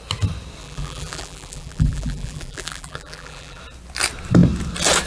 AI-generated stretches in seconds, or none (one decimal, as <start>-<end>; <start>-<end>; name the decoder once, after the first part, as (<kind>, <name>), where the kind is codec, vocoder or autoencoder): 0.6-3.6 (vocoder, BigVGAN v2)